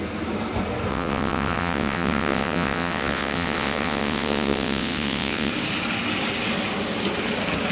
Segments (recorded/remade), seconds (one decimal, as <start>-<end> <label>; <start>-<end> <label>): 0.0-0.9 recorded; 0.9-5.5 remade; 5.5-7.7 recorded